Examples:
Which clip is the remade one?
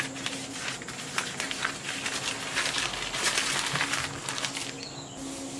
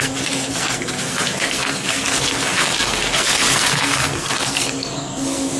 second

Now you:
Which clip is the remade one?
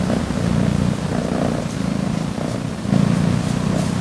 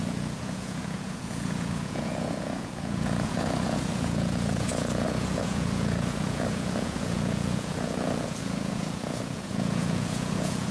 second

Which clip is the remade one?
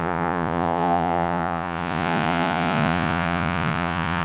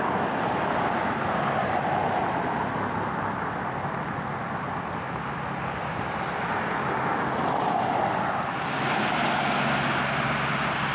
first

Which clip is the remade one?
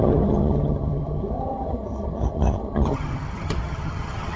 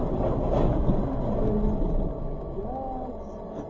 first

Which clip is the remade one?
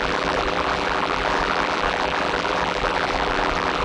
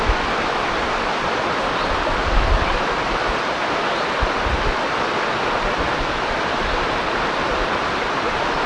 first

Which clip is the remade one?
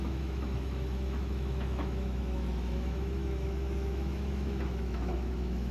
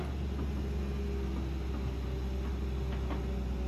first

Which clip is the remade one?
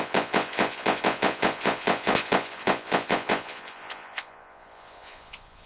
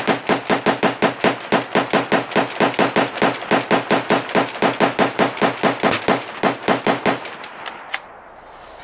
first